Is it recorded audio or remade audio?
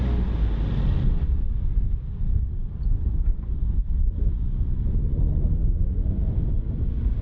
recorded